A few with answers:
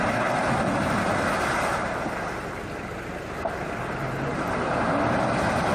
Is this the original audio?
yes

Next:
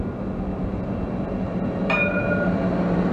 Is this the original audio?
yes